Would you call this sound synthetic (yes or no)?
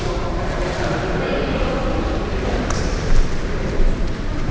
yes